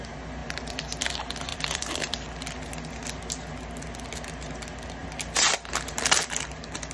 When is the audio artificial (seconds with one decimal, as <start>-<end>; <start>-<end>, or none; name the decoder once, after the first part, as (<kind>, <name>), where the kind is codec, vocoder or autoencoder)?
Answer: 1.5-2.3 (vocoder, BigVGAN v2); 5.0-5.7